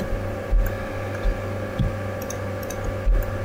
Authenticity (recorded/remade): recorded